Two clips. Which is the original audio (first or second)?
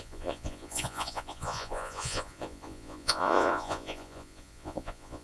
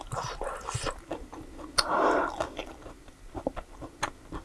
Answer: second